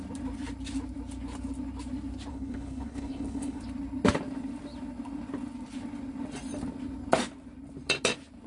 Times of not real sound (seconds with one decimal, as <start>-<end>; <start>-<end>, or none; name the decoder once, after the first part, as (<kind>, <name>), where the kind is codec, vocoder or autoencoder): 2.3-3.6 (codec, HILCodec)